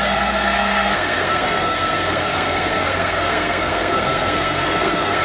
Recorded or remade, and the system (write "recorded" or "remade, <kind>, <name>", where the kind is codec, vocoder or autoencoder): remade, codec, SNAC